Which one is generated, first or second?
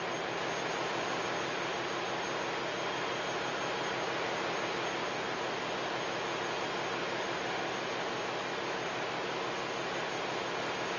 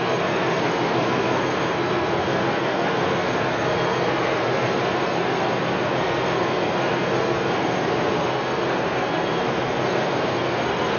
second